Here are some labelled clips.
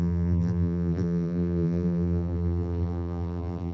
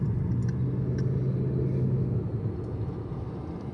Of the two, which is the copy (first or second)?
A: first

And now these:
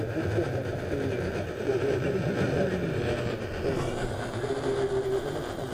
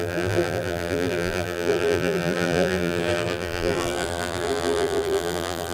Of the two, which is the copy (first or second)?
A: second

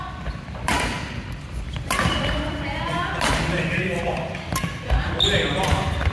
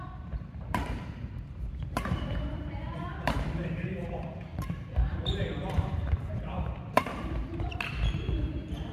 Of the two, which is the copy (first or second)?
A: second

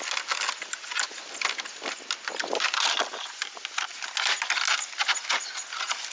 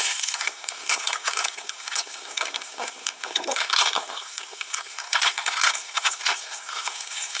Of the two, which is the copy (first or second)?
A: second